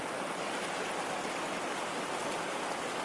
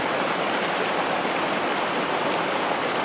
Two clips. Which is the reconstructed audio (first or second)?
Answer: second